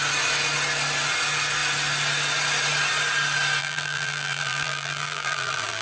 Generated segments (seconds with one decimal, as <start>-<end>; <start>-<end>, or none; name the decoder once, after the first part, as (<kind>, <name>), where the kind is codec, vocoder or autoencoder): 3.6-5.8 (vocoder, BigVGAN v2)